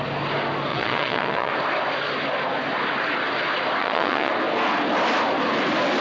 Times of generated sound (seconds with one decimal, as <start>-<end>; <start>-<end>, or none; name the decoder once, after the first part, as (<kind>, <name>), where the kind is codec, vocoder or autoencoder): 0.7-1.5 (vocoder, Vocos); 3.8-4.3